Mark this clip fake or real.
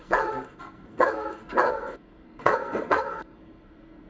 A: fake